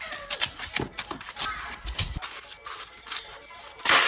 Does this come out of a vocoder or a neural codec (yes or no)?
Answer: no